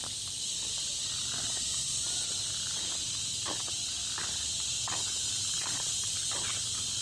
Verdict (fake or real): real